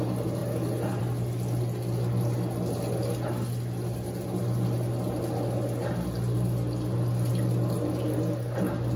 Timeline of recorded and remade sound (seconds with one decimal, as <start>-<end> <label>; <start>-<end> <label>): 0.0-9.0 recorded